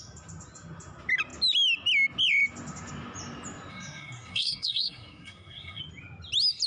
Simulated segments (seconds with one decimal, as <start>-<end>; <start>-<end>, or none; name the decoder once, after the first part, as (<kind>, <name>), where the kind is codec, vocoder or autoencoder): 3.7-5.8 (codec, SNAC)